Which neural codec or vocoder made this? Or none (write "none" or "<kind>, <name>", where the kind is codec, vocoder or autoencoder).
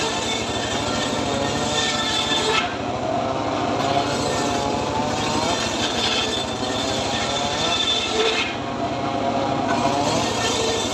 none